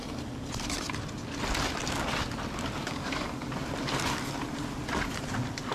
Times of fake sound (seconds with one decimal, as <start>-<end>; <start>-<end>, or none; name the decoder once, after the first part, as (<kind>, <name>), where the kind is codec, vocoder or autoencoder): 2.8-3.4 (codec, DAC)